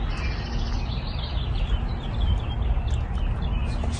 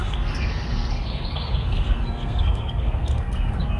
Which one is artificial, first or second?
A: second